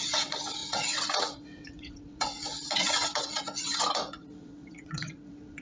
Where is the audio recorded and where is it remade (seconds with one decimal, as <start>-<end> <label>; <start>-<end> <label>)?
0.0-5.6 remade